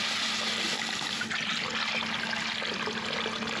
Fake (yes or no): no